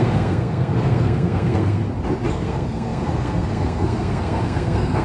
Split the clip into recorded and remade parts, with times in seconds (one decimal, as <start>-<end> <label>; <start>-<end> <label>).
0.0-1.8 remade; 1.8-2.3 recorded; 2.3-5.0 remade